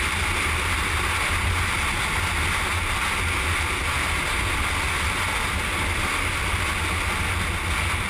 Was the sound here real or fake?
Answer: real